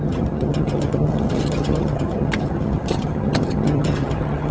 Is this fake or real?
fake